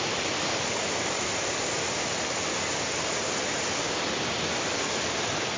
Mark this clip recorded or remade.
recorded